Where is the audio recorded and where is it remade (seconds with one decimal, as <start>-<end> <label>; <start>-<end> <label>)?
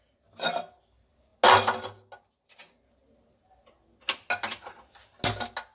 0.0-5.7 recorded